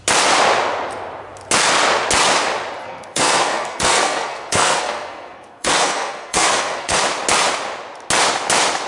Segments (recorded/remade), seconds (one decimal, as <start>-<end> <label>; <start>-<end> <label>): 0.0-2.8 recorded; 2.8-7.0 remade; 7.0-8.9 recorded